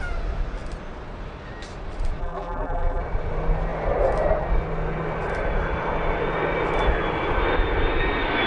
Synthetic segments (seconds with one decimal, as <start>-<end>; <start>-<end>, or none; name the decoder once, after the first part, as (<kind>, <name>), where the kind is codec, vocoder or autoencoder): 2.2-3.0 (vocoder, BigVGAN v2)